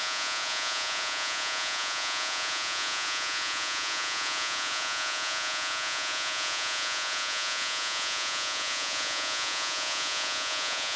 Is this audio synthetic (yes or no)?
yes